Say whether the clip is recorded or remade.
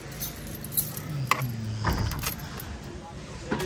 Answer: recorded